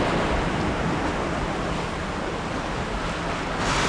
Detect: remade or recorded recorded